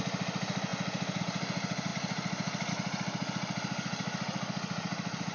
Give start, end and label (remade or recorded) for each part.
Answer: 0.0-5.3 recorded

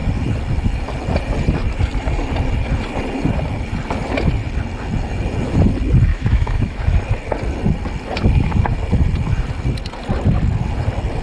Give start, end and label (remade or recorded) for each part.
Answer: 0.0-6.1 recorded; 6.1-6.8 remade; 6.8-11.2 recorded

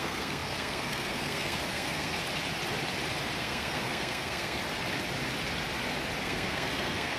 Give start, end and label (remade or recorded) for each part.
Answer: 0.0-2.2 remade; 2.2-3.4 recorded; 3.4-4.6 remade; 4.6-6.2 recorded; 6.2-7.2 remade

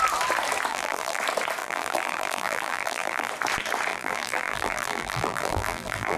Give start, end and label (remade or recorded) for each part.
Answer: 0.0-0.7 recorded; 0.7-1.2 remade; 1.2-1.6 recorded; 1.6-3.3 remade; 3.3-3.9 recorded; 3.9-6.2 remade

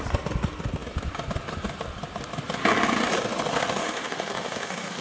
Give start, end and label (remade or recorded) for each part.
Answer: 0.0-3.8 recorded; 3.8-5.0 remade

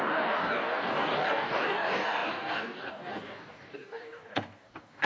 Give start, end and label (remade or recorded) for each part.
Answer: 0.0-5.1 remade